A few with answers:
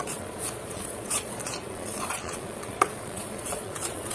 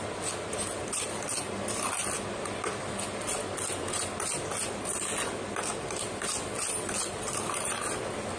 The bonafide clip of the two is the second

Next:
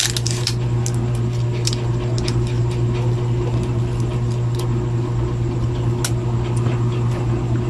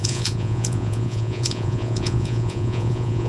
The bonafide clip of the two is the first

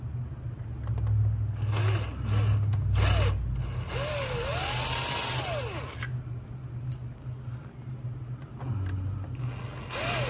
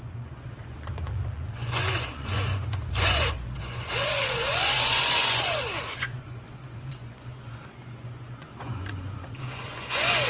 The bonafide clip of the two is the first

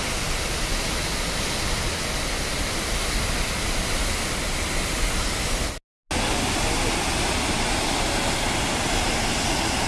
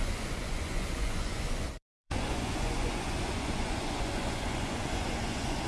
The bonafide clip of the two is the first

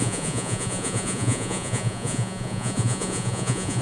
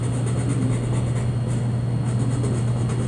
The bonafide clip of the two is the second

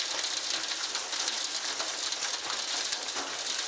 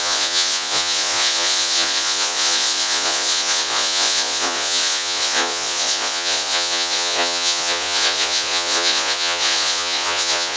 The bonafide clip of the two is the first